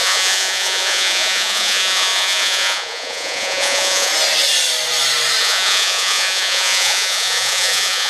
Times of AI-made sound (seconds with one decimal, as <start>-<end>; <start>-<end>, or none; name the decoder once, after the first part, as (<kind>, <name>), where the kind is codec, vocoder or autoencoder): 0.0-4.1 (vocoder, Vocos); 5.4-8.1